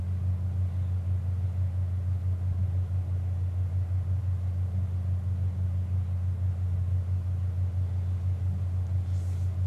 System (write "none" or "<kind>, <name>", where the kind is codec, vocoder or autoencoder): none